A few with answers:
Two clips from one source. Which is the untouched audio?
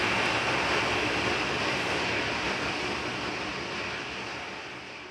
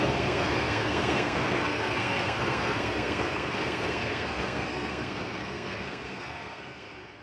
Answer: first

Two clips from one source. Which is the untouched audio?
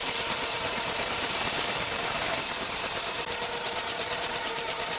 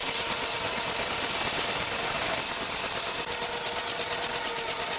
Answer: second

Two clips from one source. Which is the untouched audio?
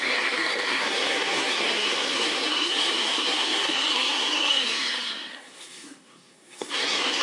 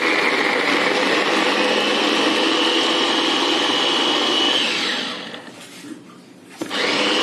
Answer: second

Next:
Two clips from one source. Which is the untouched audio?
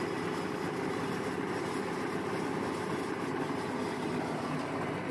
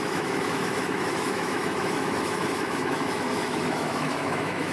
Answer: first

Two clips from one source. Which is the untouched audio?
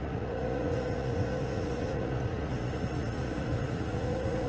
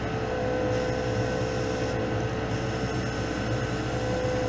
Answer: second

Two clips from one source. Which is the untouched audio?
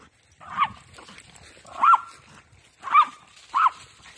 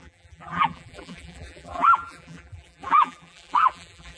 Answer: first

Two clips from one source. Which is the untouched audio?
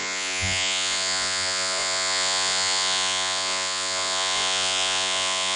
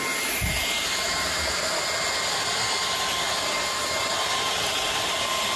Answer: second